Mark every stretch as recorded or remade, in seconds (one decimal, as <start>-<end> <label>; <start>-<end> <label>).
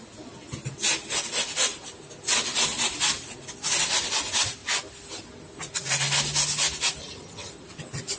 0.0-7.0 recorded; 7.0-7.5 remade; 7.5-8.2 recorded